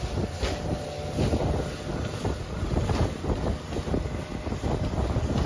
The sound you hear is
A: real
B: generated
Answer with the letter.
A